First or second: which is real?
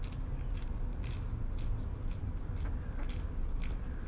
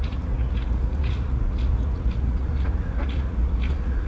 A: first